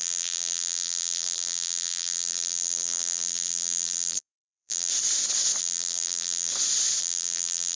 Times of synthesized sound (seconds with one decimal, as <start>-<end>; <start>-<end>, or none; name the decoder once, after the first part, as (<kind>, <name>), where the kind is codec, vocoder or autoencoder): 0.0-4.9 (vocoder, BigVGAN v2); 5.6-6.5; 7.0-7.7